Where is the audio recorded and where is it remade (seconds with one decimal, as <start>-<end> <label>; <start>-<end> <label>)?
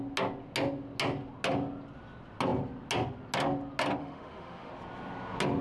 0.0-4.0 recorded; 4.0-4.7 remade; 4.7-5.6 recorded